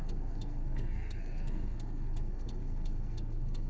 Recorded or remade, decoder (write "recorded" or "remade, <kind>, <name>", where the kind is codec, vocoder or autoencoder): remade, codec, SNAC